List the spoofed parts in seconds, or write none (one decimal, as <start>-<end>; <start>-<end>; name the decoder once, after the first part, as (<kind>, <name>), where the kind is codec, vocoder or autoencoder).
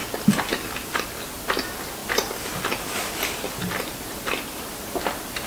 none